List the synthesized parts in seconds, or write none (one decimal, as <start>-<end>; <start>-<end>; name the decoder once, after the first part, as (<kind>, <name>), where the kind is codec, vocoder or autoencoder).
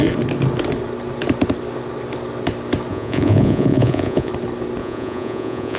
2.9-4.3 (vocoder, Vocos); 4.8-5.8